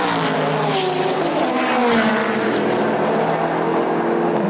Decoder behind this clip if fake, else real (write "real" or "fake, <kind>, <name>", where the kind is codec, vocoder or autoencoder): real